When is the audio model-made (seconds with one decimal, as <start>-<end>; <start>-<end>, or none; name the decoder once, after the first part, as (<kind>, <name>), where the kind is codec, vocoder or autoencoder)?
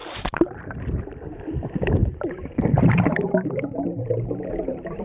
0.0-1.0 (vocoder, BigVGAN v2); 2.0-5.0